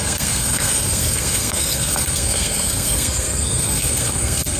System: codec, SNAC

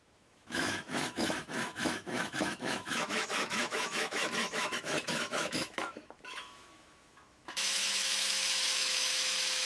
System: autoencoder, DAC-VAE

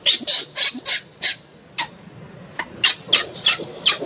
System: none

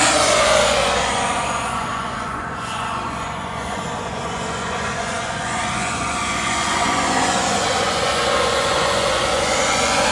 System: vocoder, Vocos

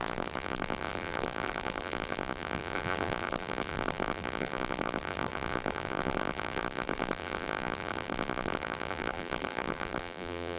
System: vocoder, BigVGAN v2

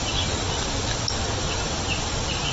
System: vocoder, BigVGAN v2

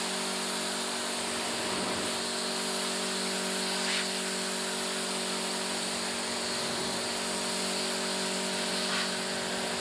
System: none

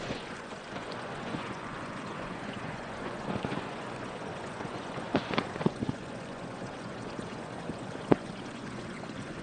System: vocoder, Vocos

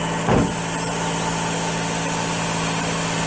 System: none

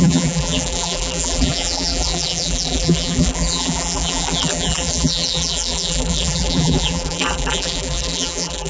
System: vocoder, BigVGAN v2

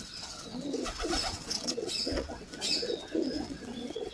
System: vocoder, WaveNeXt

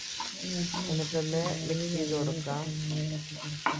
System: none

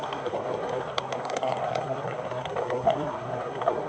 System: codec, SNAC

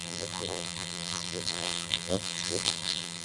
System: vocoder, BigVGAN v2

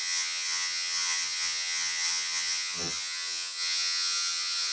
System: vocoder, HiFi-GAN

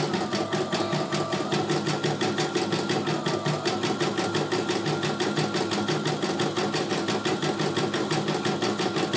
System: none